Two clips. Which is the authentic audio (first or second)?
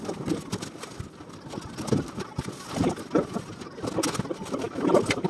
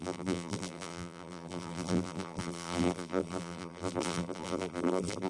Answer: first